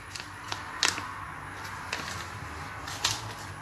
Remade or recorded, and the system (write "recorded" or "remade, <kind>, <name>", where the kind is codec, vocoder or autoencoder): recorded